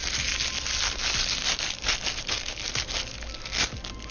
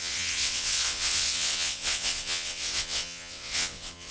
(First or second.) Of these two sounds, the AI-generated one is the second